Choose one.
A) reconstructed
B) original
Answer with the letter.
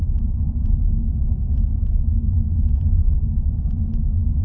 A